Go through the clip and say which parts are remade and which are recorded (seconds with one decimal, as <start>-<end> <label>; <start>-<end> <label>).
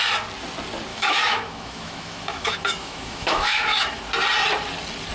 0.0-0.9 recorded; 0.9-4.0 remade; 4.0-5.1 recorded